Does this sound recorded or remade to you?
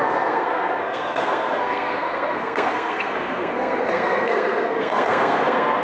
remade